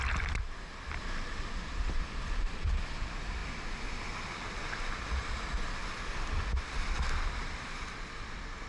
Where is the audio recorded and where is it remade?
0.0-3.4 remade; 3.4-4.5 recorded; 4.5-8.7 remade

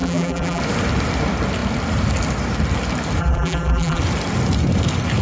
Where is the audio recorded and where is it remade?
0.0-0.6 remade; 0.6-3.2 recorded; 3.2-4.0 remade; 4.0-5.2 recorded

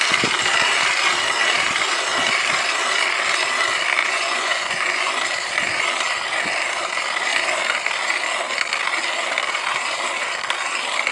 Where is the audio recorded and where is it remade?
0.0-4.0 recorded; 4.0-5.2 remade; 5.2-11.1 recorded